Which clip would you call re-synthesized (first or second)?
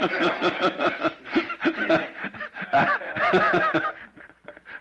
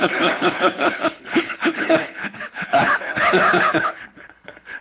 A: second